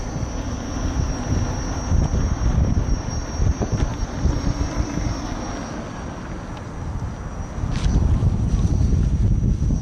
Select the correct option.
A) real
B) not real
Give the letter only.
A